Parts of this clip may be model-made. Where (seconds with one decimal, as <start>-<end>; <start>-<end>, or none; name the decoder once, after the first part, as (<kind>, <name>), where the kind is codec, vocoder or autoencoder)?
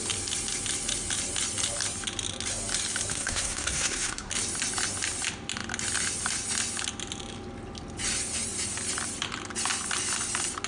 3.1-4.3 (codec, SNAC)